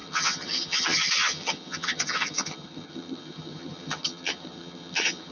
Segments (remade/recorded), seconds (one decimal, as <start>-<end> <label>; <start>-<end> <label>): 0.0-5.3 remade